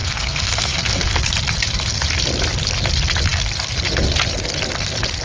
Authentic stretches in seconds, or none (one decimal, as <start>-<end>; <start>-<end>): 1.2-5.2